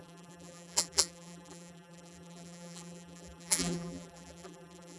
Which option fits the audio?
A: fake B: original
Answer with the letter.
A